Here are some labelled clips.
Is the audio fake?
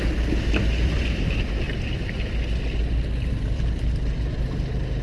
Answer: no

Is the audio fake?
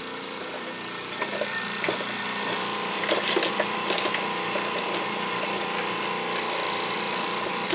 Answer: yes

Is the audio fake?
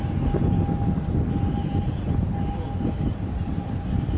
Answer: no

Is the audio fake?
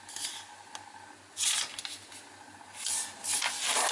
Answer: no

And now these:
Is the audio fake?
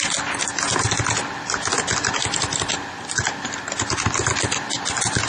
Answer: no